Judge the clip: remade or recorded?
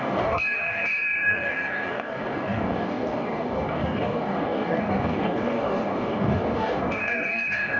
remade